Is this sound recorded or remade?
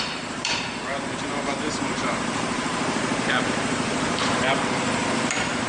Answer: remade